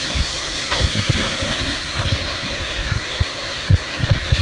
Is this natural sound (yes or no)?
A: no